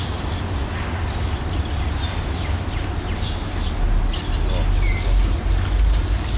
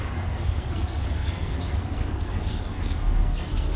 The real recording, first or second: first